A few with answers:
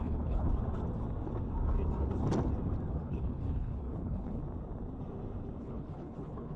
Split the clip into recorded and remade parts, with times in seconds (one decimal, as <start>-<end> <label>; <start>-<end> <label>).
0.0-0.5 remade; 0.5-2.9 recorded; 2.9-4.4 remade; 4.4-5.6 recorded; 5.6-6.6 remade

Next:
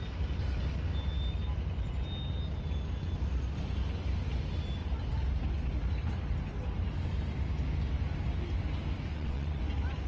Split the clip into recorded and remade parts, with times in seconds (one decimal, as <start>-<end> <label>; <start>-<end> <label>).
0.0-9.1 recorded; 9.1-9.6 remade; 9.6-10.1 recorded

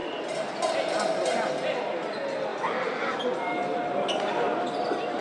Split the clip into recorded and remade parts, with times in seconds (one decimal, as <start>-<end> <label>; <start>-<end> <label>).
0.0-2.5 recorded; 2.5-3.2 remade; 3.2-5.2 recorded

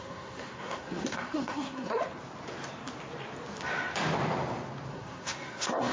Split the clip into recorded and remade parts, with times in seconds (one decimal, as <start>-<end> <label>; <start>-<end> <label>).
0.0-2.0 remade; 2.0-4.9 recorded; 4.9-5.9 remade